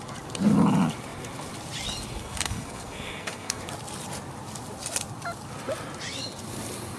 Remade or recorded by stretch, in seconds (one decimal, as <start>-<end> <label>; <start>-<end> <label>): 0.0-2.2 recorded; 2.2-3.6 remade; 3.6-7.0 recorded